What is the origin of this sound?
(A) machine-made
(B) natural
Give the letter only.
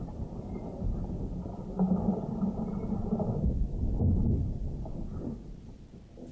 B